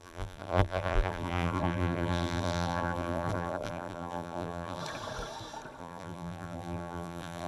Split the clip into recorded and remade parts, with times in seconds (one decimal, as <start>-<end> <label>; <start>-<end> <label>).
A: 0.0-4.8 remade; 4.8-5.8 recorded; 5.8-7.5 remade